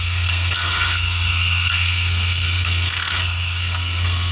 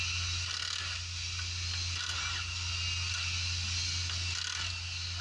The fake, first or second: first